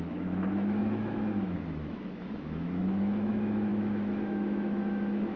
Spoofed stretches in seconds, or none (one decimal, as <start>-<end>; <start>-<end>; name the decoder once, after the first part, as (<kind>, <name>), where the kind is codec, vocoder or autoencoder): 0.0-5.4 (autoencoder, DAC-VAE)